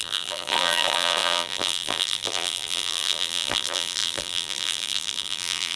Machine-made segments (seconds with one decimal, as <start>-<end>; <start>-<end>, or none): 0.0-5.8